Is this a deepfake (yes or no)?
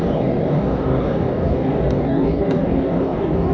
yes